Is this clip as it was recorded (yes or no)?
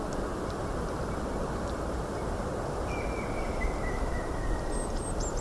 no